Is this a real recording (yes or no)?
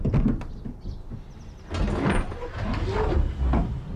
yes